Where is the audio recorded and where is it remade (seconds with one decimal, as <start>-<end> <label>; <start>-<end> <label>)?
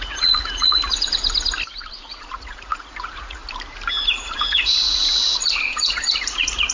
0.0-1.2 remade; 1.2-1.9 recorded; 1.9-3.4 remade; 3.4-4.1 recorded; 4.1-6.7 remade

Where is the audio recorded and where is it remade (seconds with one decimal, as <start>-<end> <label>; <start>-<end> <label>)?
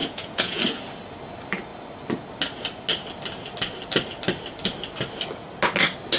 0.0-0.6 remade; 0.6-6.2 recorded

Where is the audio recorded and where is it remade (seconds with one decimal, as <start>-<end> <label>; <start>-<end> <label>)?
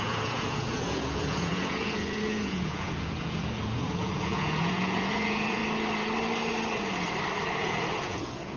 0.0-5.6 remade; 5.6-7.5 recorded; 7.5-8.6 remade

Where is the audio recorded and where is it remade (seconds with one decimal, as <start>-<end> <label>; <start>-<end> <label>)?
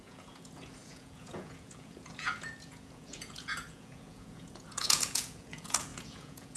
0.0-6.6 remade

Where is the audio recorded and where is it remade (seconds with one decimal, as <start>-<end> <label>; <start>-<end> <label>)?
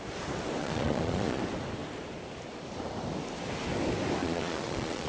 0.0-0.6 recorded; 0.6-1.4 remade; 1.4-4.2 recorded; 4.2-5.1 remade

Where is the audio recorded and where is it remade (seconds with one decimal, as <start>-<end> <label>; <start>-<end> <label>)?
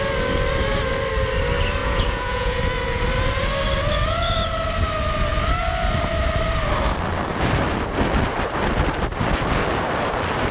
0.0-1.8 recorded; 1.8-2.6 remade; 2.6-10.5 recorded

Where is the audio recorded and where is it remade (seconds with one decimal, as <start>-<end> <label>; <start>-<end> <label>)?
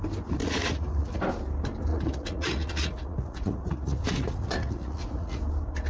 0.0-0.4 recorded; 0.4-1.2 remade; 1.2-1.9 recorded; 1.9-5.4 remade; 5.4-5.9 recorded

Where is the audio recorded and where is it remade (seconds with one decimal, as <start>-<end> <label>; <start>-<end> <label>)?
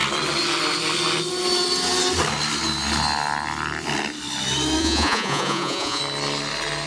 0.0-4.8 recorded; 4.8-6.0 remade; 6.0-6.9 recorded